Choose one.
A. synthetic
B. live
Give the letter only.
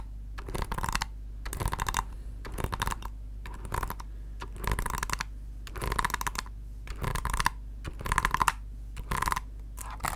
B